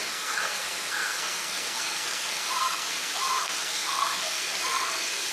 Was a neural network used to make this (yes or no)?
yes